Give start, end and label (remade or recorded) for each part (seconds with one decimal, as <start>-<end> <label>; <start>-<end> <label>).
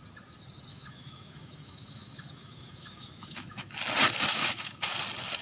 0.0-0.7 recorded; 0.7-3.7 remade; 3.7-4.3 recorded; 4.3-4.8 remade; 4.8-5.4 recorded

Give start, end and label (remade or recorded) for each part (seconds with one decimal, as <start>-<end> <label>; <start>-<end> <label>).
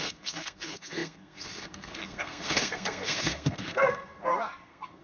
0.0-5.0 remade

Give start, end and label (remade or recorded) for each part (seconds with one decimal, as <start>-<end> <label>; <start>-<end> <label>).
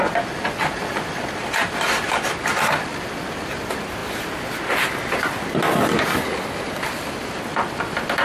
0.0-8.2 recorded